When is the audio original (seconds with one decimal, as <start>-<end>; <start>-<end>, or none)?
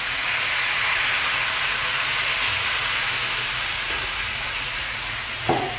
3.0-3.6